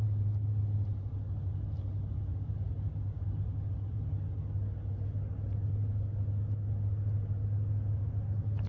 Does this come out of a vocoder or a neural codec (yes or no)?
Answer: no